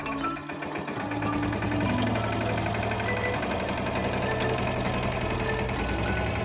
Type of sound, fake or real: real